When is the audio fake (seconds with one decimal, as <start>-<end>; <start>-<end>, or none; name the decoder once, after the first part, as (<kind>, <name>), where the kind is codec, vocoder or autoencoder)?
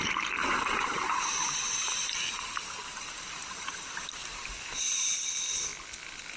0.4-3.4 (vocoder, BigVGAN v2); 4.2-4.8